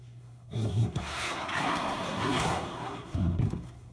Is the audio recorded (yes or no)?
no